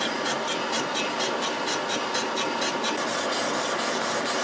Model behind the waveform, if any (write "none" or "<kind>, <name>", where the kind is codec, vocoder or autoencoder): none